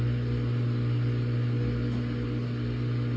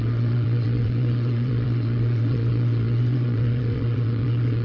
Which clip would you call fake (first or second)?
second